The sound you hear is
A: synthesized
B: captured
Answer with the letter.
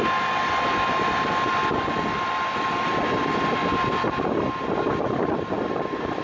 B